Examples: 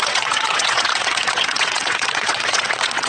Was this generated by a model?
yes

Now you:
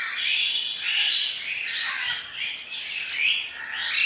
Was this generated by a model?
no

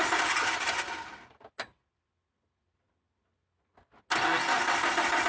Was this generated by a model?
no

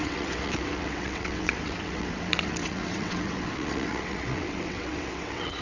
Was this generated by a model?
yes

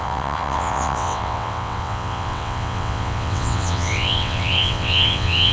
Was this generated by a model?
yes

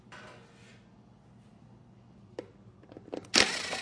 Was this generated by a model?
no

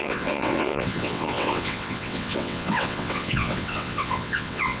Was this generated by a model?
yes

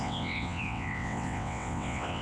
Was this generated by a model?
yes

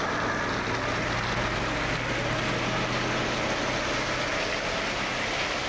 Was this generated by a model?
no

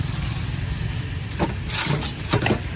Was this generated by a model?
no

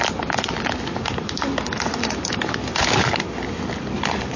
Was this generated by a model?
no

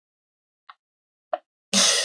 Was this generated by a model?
no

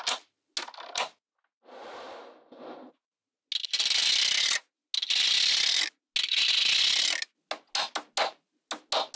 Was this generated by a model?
no